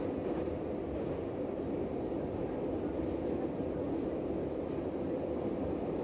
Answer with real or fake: real